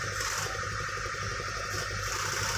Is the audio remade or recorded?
recorded